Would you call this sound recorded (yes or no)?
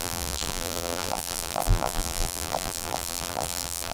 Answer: no